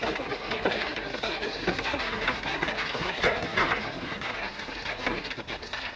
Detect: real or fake fake